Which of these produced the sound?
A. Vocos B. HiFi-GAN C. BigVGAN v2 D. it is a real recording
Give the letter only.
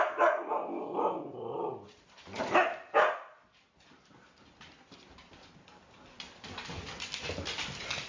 D